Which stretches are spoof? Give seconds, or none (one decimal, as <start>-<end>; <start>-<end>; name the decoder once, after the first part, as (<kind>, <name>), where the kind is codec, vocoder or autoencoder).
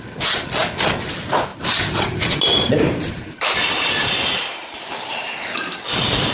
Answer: 1.5-5.3 (vocoder, BigVGAN v2)